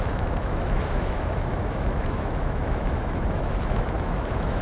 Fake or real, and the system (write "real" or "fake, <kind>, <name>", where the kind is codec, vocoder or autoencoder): fake, autoencoder, DAC-VAE